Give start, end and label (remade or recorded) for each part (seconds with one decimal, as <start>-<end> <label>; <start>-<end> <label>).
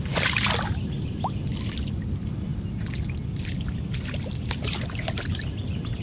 0.0-6.0 recorded